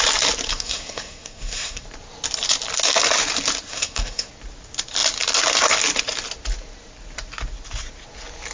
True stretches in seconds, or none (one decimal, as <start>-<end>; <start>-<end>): 0.0-0.5; 1.8-3.7; 4.3-8.5